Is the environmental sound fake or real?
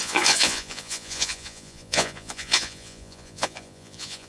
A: fake